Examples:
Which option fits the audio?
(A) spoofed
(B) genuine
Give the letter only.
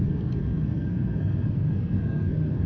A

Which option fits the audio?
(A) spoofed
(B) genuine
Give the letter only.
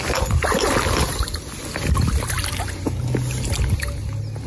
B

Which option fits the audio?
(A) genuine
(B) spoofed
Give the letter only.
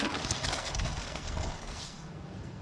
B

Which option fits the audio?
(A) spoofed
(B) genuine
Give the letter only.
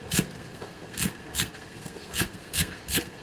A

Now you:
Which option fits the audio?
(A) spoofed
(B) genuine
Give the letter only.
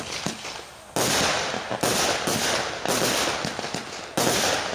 B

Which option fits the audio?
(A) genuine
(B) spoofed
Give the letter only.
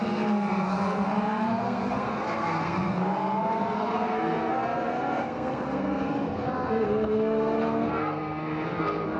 B